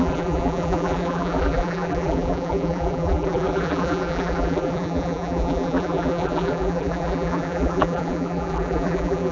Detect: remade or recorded remade